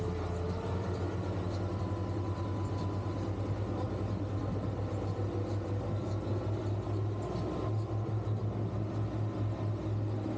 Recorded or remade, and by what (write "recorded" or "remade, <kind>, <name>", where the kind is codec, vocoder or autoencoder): recorded